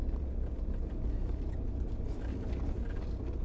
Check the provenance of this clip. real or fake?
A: real